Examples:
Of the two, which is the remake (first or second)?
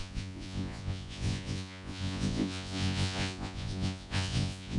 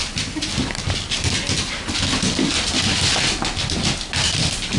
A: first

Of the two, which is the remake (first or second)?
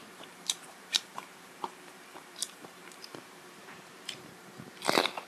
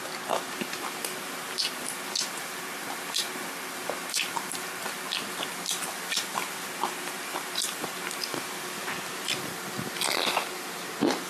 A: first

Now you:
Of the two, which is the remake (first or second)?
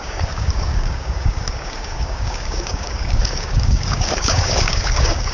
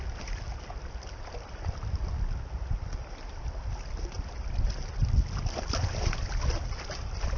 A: first